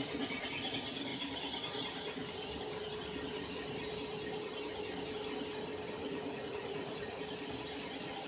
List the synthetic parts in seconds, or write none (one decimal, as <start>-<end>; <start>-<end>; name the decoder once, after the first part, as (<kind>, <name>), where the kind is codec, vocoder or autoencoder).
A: 6.0-7.2 (vocoder, Vocos)

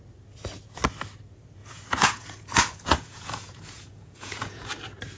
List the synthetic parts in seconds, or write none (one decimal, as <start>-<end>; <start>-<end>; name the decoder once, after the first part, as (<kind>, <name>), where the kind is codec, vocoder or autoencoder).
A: 1.6-4.7 (vocoder, Vocos)